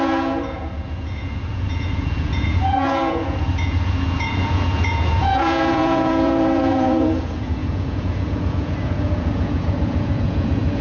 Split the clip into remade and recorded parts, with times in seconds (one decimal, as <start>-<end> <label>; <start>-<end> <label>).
0.0-10.8 remade